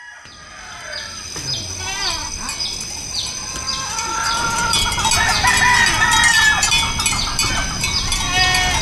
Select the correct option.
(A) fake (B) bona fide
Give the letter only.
B